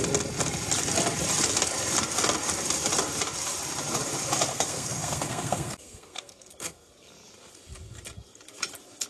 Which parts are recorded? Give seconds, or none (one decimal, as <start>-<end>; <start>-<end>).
0.0-4.5; 6.9-9.1